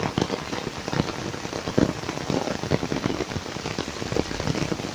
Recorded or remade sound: recorded